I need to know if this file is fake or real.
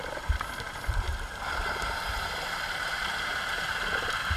fake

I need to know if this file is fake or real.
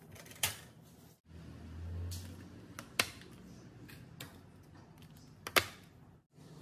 real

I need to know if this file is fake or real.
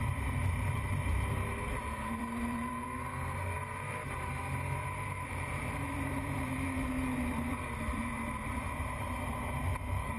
fake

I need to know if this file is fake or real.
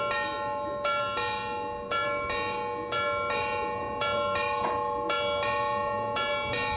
real